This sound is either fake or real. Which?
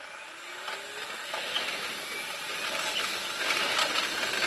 real